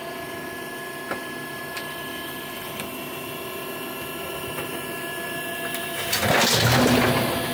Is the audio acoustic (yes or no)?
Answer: yes